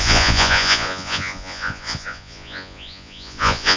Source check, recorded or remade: remade